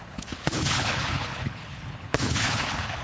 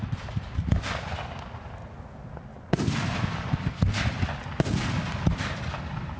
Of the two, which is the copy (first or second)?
first